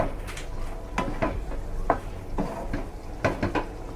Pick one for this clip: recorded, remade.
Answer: recorded